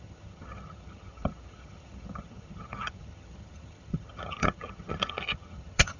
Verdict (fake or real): fake